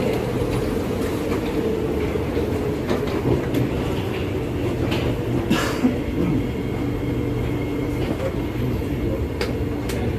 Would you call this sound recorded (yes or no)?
yes